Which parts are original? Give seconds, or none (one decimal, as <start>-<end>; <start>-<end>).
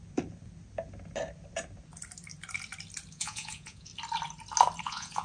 0.0-3.1; 3.9-4.8